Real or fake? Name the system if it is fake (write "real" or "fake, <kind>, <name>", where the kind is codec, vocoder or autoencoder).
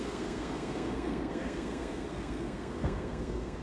fake, codec, SNAC